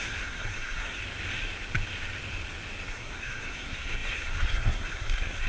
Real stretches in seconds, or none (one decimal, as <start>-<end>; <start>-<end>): 1.0-2.9